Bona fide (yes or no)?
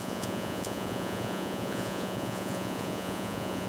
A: no